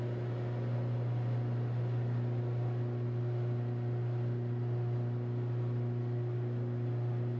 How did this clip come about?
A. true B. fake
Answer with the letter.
A